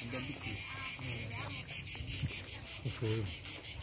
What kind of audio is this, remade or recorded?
recorded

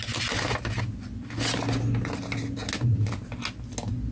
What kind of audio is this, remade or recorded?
recorded